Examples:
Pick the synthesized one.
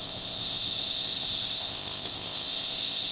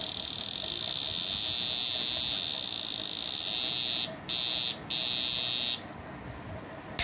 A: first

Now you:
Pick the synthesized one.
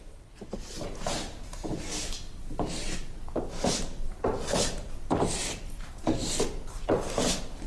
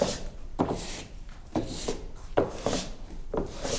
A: second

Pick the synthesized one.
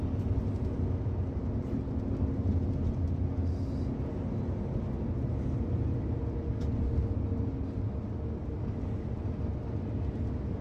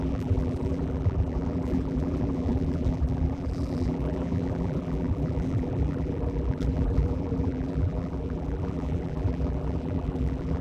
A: second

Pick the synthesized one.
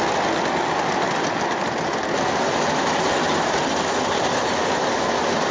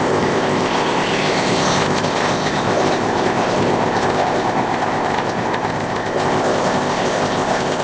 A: second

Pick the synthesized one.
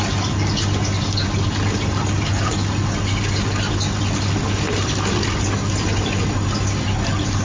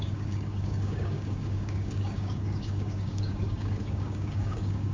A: second